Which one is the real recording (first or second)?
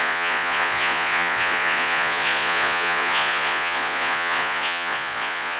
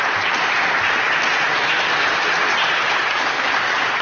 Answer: second